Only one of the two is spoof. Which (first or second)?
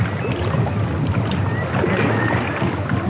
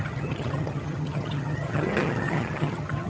second